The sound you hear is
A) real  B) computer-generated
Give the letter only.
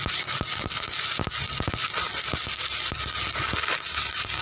A